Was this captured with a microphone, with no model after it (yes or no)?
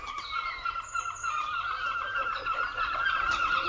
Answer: yes